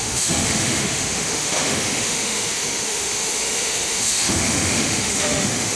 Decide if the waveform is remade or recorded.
remade